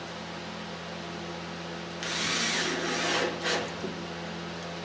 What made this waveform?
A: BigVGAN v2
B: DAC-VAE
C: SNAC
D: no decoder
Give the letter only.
D